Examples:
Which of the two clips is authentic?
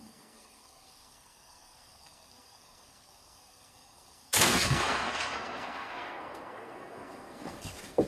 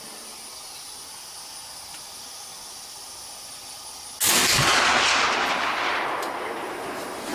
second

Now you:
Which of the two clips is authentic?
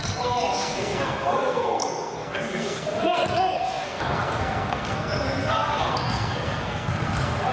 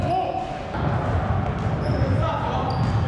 second